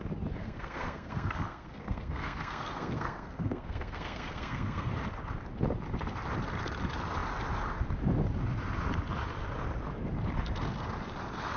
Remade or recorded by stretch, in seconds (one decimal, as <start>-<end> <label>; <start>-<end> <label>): 0.0-0.4 recorded; 0.4-4.9 remade; 4.9-11.6 recorded